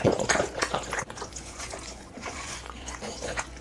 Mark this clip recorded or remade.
remade